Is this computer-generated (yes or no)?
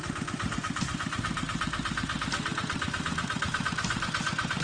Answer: yes